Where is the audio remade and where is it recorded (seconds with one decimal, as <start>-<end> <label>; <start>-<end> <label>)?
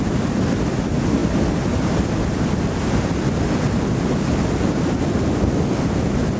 0.0-6.4 recorded